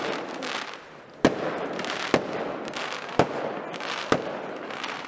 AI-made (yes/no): no